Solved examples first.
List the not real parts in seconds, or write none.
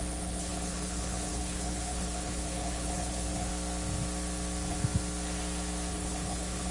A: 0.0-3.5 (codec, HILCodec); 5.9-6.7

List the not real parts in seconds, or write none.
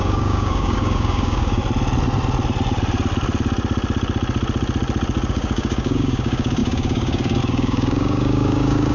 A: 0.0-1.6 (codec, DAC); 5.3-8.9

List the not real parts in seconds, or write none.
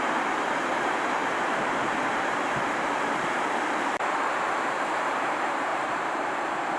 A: 0.0-6.8 (vocoder, BigVGAN v2)